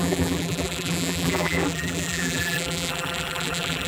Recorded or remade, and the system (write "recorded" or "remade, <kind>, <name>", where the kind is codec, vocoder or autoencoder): remade, vocoder, BigVGAN v2